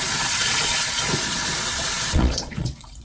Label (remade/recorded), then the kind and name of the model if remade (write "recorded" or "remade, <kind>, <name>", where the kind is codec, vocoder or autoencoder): remade, vocoder, Vocos